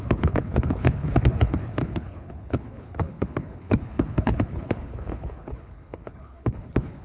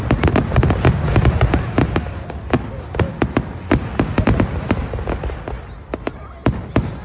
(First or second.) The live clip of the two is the second